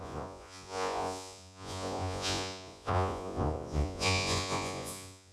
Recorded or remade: remade